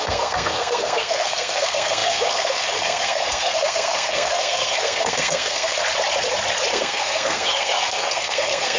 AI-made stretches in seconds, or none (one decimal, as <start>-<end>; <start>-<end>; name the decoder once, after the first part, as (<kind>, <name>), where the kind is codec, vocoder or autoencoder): 0.0-5.8 (codec, SNAC); 6.7-8.8